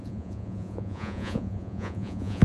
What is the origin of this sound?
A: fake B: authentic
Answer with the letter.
A